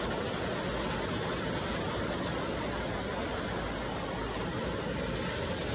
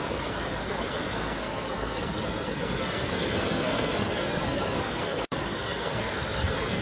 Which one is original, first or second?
first